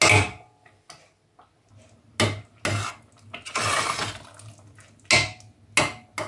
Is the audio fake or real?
real